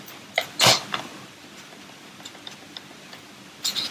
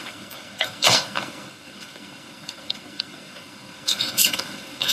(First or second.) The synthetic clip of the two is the second